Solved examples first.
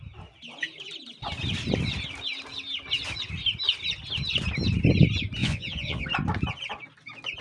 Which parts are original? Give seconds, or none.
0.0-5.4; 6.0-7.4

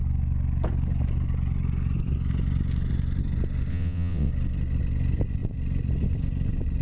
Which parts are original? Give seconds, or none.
0.0-3.7; 4.3-6.8

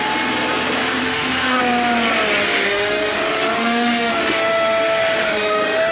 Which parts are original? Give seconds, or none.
0.0-1.0; 1.6-2.4

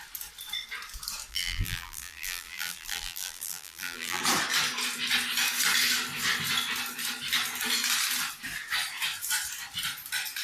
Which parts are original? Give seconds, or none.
0.0-1.3; 4.2-10.4